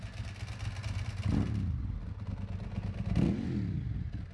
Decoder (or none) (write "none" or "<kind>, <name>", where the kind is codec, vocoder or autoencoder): none